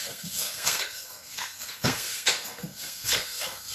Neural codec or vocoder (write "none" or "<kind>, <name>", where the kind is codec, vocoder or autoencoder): codec, SNAC